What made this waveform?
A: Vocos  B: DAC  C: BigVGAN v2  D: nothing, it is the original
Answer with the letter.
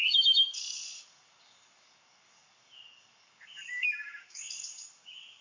B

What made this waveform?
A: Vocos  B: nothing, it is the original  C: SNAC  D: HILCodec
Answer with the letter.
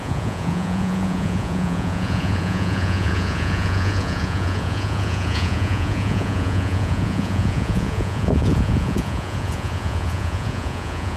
A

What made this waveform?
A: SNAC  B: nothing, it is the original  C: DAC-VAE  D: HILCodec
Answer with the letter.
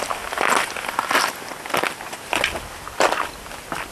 B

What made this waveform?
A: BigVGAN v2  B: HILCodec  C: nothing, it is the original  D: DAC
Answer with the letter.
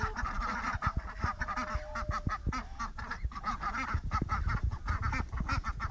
C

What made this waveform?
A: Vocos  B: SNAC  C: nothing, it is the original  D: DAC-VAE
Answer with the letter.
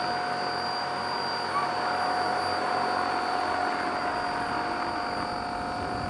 C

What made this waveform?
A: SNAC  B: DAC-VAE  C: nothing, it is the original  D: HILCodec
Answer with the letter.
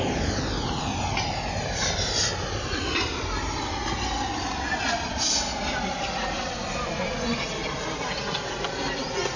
C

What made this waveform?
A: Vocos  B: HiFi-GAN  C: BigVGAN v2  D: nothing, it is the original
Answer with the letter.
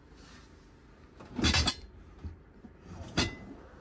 D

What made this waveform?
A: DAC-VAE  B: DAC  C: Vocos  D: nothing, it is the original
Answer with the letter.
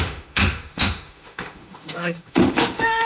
A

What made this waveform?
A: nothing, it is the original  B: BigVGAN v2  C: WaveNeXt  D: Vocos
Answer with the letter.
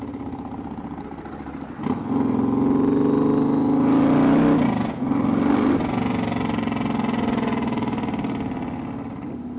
A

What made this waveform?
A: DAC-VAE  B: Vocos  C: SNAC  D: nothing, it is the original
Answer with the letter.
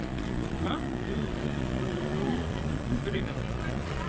B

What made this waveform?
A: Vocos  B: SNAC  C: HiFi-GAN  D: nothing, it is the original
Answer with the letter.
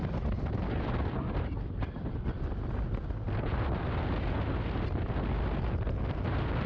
D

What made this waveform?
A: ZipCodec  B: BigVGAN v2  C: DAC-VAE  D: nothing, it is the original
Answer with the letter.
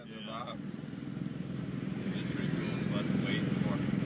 D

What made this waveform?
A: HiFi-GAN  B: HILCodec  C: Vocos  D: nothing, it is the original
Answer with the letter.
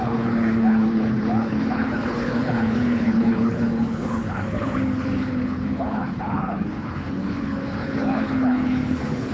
B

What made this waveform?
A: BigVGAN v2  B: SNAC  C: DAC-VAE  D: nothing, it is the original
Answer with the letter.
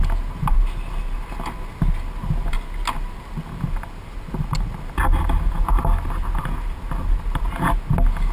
D